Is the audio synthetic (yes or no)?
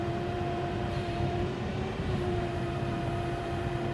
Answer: yes